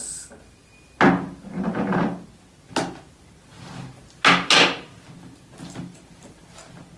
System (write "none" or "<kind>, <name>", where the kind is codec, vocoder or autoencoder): none